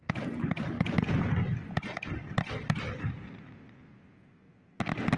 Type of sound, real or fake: real